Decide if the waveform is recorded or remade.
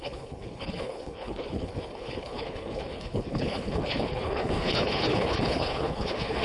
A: remade